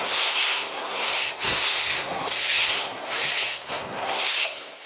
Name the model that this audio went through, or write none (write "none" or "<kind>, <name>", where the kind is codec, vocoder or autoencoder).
codec, SNAC